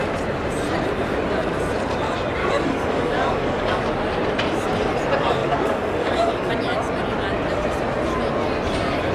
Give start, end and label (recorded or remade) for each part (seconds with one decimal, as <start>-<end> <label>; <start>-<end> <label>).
0.0-2.4 recorded; 2.4-3.8 remade; 3.8-5.4 recorded; 5.4-6.5 remade; 6.5-9.1 recorded